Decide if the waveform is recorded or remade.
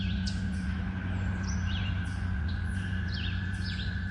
remade